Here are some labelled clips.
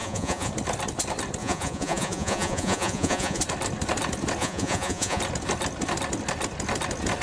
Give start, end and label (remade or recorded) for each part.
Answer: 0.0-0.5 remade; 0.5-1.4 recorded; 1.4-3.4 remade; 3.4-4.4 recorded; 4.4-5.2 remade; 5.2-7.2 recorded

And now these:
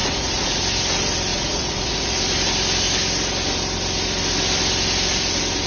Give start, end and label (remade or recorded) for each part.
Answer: 0.0-0.6 remade; 0.6-1.3 recorded; 1.3-2.2 remade; 2.2-5.7 recorded

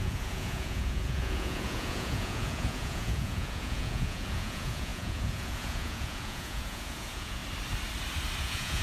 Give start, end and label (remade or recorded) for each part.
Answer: 0.0-7.4 remade; 7.4-8.4 recorded; 8.4-8.8 remade

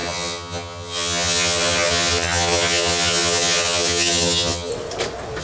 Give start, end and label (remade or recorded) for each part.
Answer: 0.0-4.7 remade; 4.7-5.4 recorded

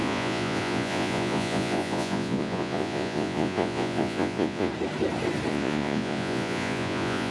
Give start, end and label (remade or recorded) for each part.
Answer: 0.0-4.7 remade; 4.7-5.5 recorded; 5.5-7.3 remade